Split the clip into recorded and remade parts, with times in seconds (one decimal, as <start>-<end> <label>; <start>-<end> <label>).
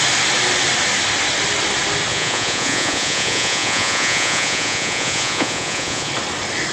0.0-2.1 recorded; 2.1-6.1 remade; 6.1-6.7 recorded